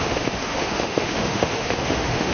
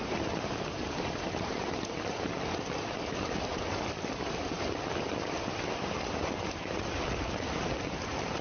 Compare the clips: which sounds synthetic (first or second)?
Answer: first